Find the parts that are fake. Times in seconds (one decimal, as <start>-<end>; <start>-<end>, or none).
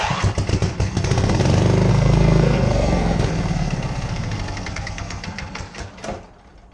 0.5-1.4; 1.9-5.9